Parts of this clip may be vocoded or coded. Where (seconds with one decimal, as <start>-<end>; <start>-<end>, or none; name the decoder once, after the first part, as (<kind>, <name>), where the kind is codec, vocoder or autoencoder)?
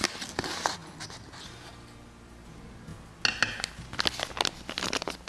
none